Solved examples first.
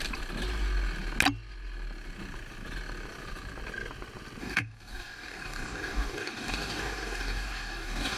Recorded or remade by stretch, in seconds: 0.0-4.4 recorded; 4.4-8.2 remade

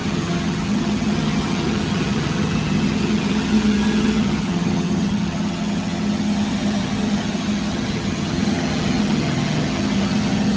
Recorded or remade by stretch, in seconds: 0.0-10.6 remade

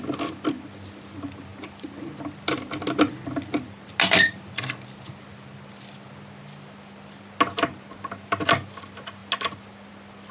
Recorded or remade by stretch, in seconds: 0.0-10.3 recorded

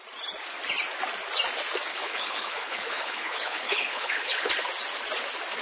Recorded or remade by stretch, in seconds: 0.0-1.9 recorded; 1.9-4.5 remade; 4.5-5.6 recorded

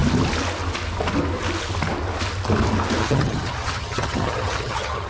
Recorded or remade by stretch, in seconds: 0.0-3.0 recorded; 3.0-5.1 remade

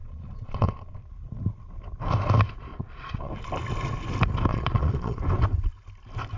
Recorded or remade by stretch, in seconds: 0.0-1.0 remade; 1.0-2.7 recorded; 2.7-3.3 remade; 3.3-4.5 recorded; 4.5-5.2 remade; 5.2-6.4 recorded